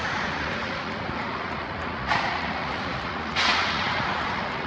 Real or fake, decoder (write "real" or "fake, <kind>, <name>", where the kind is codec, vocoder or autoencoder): fake, vocoder, Vocos